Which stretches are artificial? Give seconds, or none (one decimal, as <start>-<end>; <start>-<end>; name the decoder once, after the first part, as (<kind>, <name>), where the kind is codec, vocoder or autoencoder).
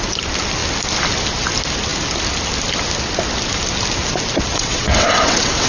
4.5-5.7 (vocoder, WaveNeXt)